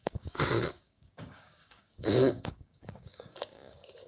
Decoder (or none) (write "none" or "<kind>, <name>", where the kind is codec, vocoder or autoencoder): codec, DAC